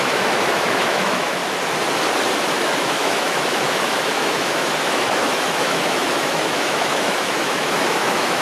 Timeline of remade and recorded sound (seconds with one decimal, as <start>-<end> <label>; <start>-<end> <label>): 0.0-1.4 remade; 1.4-2.5 recorded; 2.5-8.4 remade